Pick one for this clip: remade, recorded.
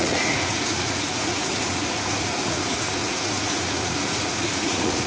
remade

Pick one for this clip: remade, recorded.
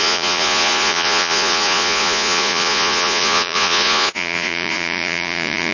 remade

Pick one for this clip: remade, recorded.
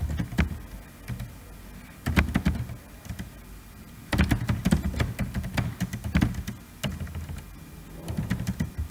recorded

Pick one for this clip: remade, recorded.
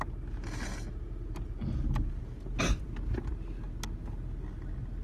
recorded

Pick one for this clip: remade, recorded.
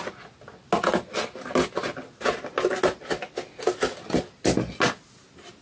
recorded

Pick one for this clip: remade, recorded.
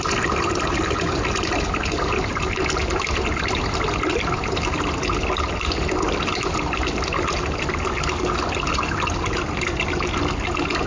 recorded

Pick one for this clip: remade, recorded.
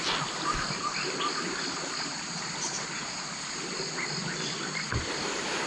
recorded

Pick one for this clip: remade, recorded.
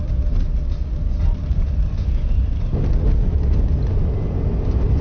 recorded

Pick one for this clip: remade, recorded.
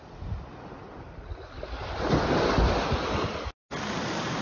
recorded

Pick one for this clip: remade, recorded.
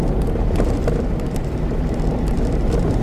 recorded